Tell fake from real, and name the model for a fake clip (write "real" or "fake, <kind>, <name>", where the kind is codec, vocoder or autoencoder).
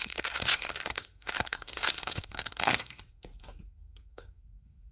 fake, codec, SNAC